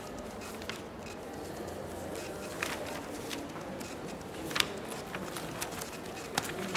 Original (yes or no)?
yes